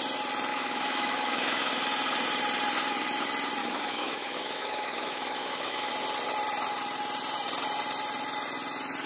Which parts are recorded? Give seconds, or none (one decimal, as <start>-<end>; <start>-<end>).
0.0-0.5; 1.7-3.6; 5.9-9.1